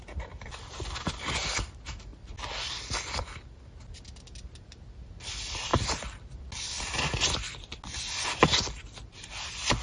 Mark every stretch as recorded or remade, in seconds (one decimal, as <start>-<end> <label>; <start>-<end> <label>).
0.0-9.8 recorded